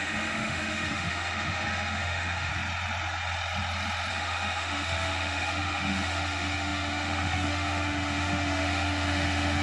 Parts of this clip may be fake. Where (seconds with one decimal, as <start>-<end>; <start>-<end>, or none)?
0.0-2.5; 4.1-9.6